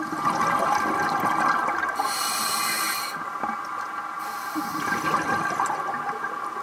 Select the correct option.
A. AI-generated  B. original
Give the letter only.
B